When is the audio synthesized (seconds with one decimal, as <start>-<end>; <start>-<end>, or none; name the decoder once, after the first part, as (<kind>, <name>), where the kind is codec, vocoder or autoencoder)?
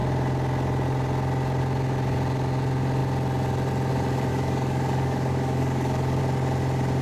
4.3-6.2 (codec, DAC)